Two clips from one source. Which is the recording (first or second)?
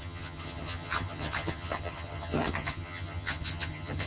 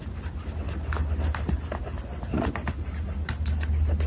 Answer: second